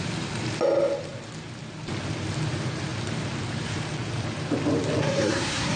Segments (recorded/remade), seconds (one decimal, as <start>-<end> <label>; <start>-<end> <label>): 0.0-5.0 recorded; 5.0-5.8 remade